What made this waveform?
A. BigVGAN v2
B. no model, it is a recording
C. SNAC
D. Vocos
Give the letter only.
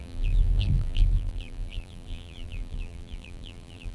A